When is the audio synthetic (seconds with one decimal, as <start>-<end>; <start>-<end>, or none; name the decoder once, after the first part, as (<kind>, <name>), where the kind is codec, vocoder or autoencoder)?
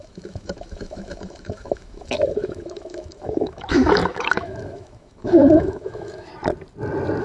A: 0.0-6.3 (autoencoder, DAC-VAE)